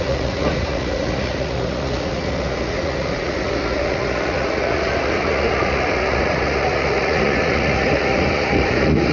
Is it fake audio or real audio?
fake